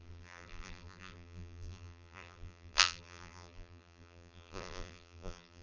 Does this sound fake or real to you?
fake